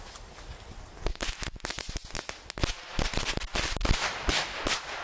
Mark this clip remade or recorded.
recorded